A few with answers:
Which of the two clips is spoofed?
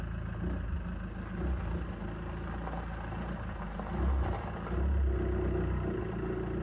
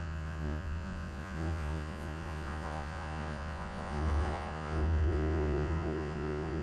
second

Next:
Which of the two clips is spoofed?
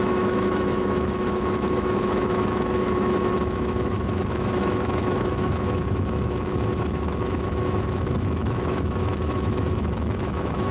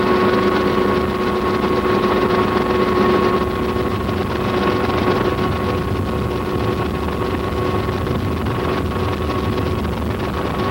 first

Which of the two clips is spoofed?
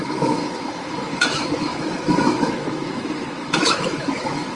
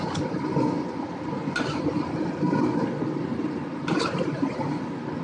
first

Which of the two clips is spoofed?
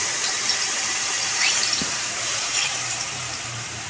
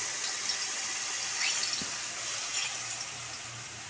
first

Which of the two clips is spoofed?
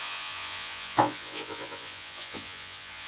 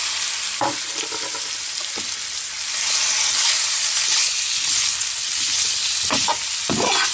first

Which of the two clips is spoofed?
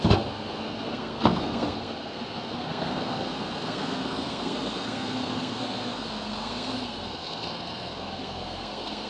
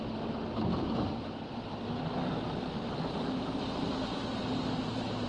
first